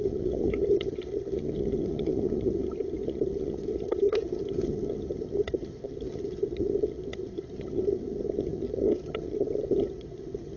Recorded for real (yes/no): no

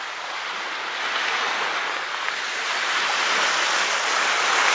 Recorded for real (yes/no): yes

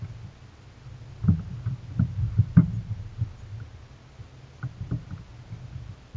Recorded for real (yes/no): yes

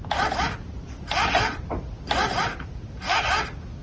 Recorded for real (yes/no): yes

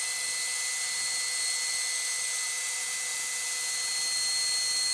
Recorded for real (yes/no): yes